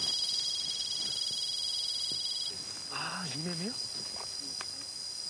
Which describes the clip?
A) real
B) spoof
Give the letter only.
A